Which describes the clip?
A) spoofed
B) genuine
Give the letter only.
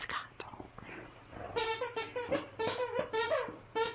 A